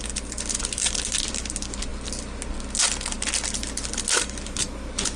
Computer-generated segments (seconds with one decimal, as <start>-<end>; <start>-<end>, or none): none